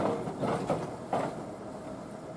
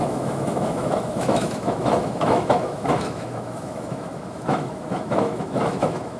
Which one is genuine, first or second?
first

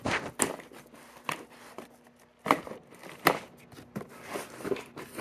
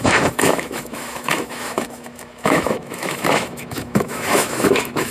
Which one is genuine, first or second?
first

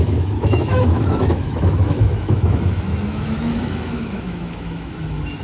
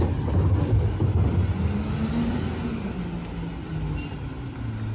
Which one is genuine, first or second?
second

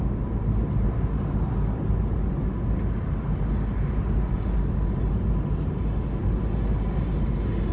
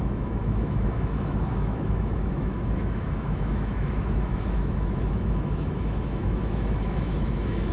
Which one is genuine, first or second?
first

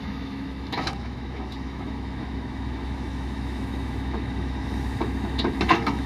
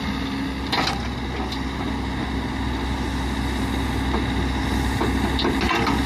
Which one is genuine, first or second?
second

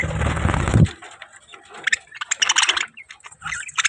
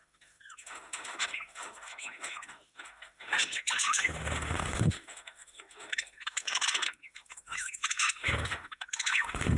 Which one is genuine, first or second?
first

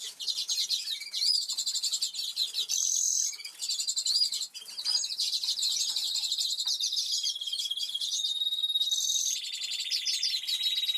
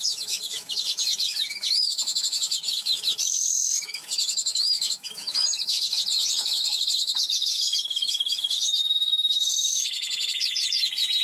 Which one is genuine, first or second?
first